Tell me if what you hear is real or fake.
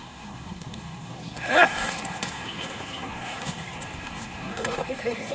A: fake